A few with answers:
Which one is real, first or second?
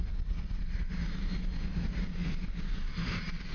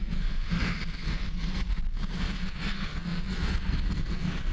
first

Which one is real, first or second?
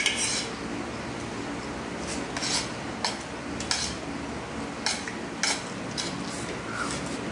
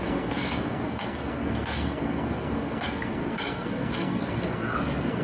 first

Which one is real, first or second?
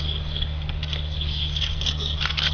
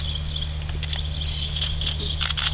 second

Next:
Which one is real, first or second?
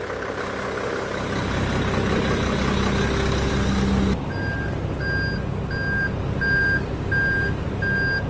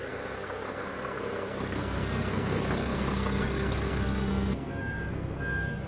first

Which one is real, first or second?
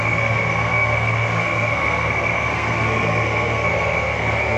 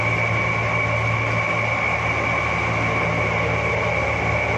second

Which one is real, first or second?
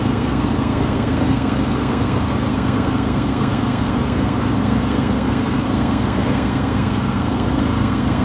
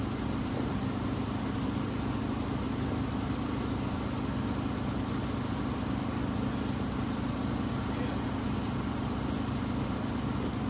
second